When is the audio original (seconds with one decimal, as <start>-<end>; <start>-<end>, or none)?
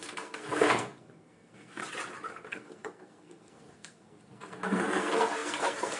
1.8-2.5